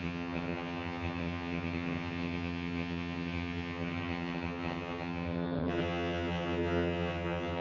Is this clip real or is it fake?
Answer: fake